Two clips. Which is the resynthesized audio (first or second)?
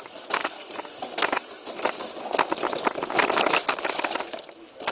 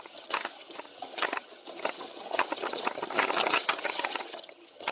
second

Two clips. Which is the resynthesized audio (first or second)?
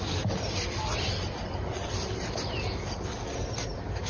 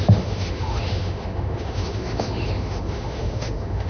second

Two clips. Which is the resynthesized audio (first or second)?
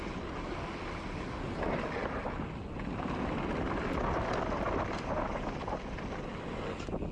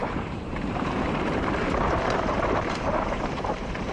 second